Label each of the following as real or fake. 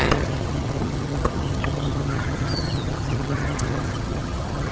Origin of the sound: fake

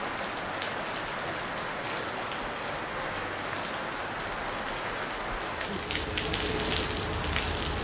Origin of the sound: real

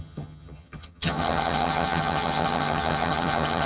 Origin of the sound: fake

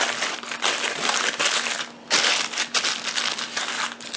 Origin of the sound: real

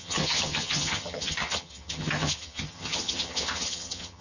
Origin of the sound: fake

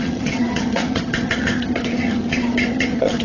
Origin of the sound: fake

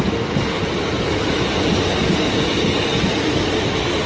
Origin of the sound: real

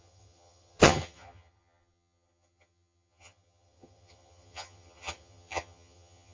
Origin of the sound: fake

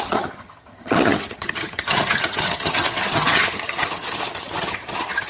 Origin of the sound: fake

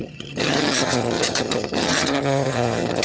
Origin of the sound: fake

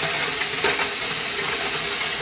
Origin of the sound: real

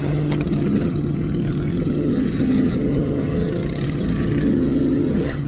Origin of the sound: fake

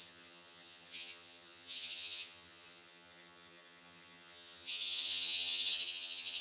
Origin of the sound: fake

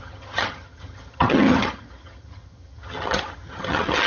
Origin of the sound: fake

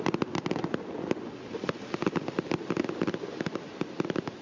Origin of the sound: real